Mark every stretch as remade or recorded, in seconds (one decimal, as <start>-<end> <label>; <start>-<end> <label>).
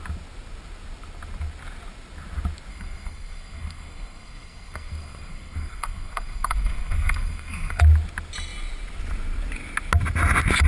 0.0-2.7 recorded; 2.7-7.8 remade; 7.8-10.7 recorded